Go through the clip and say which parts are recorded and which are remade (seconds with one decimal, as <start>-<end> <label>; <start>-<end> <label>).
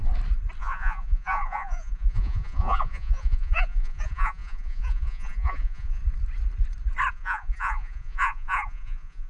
0.0-0.6 recorded; 0.6-6.0 remade; 6.0-7.1 recorded; 7.1-9.3 remade